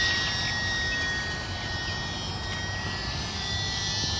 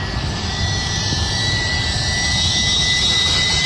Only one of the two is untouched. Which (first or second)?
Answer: first